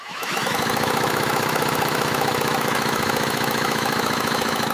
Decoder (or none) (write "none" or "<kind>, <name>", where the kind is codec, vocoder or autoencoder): autoencoder, DAC-VAE